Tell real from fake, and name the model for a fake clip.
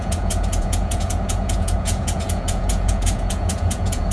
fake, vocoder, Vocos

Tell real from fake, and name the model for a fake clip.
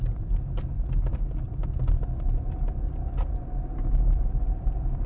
real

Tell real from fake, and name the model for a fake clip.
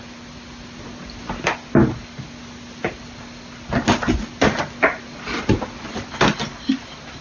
real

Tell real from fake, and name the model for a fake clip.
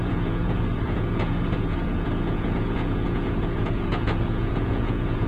fake, vocoder, Vocos